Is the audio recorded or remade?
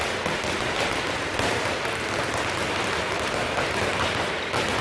recorded